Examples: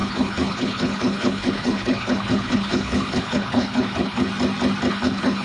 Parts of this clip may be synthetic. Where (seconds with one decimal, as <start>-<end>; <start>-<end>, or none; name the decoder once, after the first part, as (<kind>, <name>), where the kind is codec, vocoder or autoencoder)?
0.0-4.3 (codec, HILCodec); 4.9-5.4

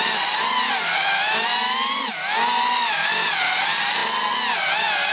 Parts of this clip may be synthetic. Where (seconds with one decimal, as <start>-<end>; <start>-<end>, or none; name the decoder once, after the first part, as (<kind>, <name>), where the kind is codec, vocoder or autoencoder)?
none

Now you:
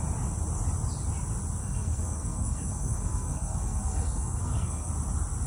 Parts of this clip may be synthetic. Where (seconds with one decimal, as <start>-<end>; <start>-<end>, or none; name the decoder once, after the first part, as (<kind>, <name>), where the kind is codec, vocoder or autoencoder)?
1.6-4.9 (codec, SNAC)

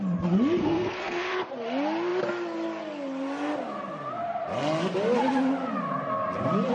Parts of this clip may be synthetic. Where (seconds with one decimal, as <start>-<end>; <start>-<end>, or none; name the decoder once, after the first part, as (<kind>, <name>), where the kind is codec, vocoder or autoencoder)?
0.6-1.5 (codec, SNAC)

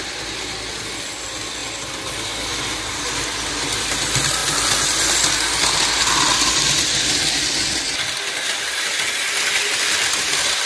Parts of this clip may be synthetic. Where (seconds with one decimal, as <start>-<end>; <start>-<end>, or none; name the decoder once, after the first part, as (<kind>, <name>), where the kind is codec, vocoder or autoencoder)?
none

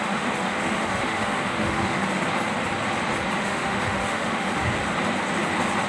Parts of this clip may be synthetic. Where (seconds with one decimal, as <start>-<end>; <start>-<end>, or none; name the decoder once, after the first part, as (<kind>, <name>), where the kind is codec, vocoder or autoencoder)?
0.0-2.0 (autoencoder, DAC-VAE); 3.4-4.8

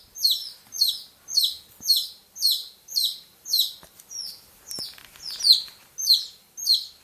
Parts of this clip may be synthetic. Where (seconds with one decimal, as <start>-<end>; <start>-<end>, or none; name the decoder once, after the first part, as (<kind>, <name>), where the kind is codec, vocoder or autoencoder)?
0.4-0.9 (vocoder, BigVGAN v2); 2.6-4.6

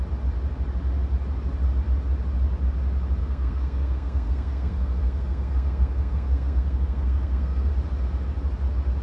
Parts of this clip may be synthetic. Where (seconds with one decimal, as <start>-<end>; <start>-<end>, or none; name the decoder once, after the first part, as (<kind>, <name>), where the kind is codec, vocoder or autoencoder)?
3.2-7.7 (codec, SNAC)